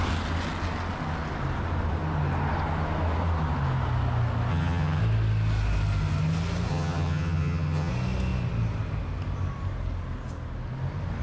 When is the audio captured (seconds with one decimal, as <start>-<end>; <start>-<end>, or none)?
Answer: 0.0-4.5; 5.0-6.7; 7.9-11.2